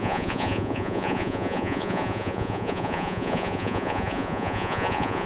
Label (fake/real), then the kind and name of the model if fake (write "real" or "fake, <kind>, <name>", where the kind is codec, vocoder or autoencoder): fake, vocoder, Vocos